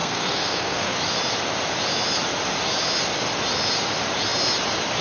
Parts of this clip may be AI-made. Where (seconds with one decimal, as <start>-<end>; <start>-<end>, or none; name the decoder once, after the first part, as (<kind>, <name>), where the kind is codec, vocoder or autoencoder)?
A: 0.0-1.0 (codec, SNAC)